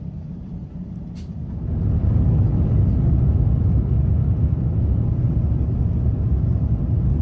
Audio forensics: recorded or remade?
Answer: recorded